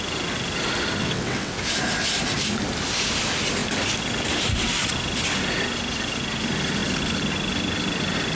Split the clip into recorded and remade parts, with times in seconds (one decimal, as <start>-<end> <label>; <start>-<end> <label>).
0.0-1.0 recorded; 1.0-1.5 remade; 1.5-8.4 recorded